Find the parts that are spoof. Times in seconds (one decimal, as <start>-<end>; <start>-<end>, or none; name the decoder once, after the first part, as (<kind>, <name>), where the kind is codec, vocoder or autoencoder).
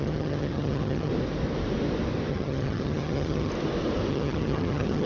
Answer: 0.0-1.1 (vocoder, HiFi-GAN); 2.3-3.5; 4.1-5.1